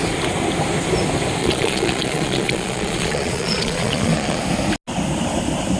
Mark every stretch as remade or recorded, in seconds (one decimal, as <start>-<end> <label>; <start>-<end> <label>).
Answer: 0.0-1.4 recorded; 1.4-4.4 remade; 4.4-5.8 recorded